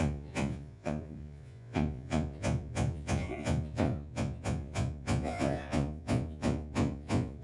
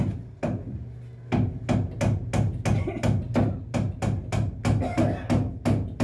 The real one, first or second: second